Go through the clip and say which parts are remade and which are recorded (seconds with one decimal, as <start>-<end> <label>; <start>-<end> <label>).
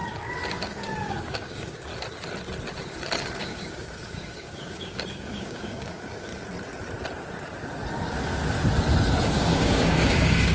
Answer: 0.0-0.5 recorded; 0.5-1.9 remade; 1.9-3.4 recorded; 3.4-6.3 remade; 6.3-9.3 recorded; 9.3-10.5 remade